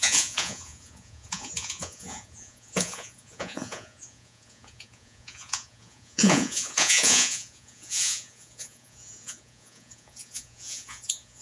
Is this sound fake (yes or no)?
yes